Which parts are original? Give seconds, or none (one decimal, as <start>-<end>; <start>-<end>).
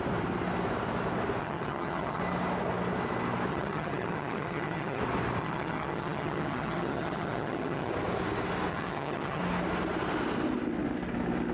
0.0-1.4; 2.2-3.5; 5.0-5.4; 7.9-8.7; 9.4-11.5